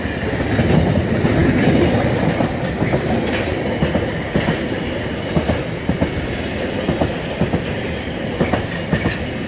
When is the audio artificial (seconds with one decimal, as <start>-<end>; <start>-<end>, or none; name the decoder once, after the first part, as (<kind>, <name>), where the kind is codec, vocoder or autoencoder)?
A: none